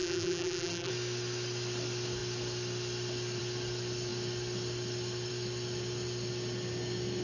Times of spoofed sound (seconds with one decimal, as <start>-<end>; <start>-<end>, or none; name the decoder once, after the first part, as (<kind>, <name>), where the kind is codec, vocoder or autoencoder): 0.0-0.9 (vocoder, BigVGAN v2)